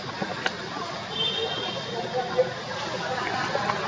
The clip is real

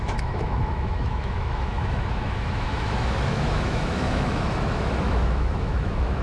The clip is fake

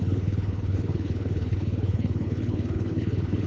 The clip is fake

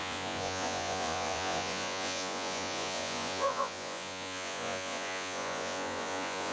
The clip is fake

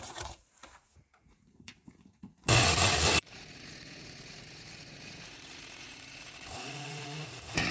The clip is fake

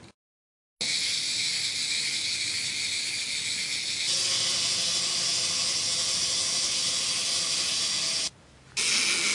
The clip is real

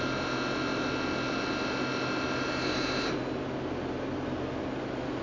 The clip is real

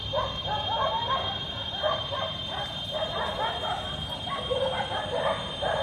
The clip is fake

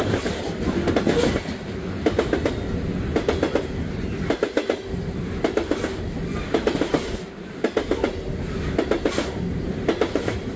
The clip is real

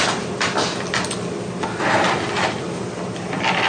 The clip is real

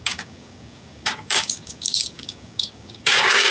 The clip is fake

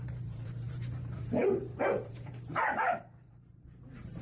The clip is fake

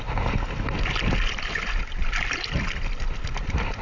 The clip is real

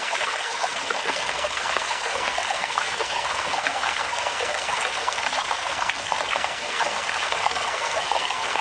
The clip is fake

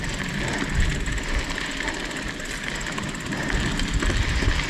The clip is real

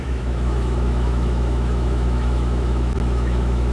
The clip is fake